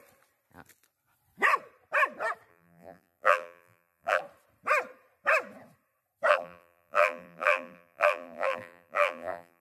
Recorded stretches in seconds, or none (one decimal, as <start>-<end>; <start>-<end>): 0.0-2.5; 4.2-6.3